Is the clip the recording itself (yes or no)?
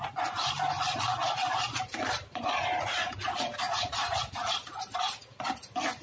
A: yes